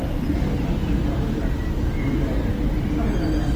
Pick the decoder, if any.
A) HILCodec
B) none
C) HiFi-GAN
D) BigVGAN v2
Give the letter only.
B